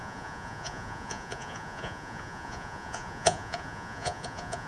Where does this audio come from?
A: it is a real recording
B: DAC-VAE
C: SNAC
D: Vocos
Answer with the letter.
D